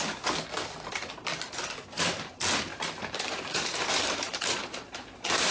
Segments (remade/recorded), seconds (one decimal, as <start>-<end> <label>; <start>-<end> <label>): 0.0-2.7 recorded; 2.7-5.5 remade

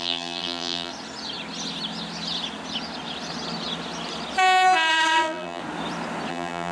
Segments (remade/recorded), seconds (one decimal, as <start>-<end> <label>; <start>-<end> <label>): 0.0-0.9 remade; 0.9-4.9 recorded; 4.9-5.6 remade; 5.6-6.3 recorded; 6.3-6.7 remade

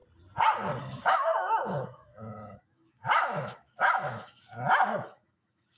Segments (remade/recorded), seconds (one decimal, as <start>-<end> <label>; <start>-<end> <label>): 0.0-0.8 recorded; 0.8-5.8 remade